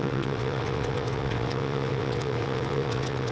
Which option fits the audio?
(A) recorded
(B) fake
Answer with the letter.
B